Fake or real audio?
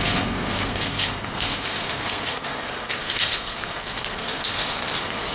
fake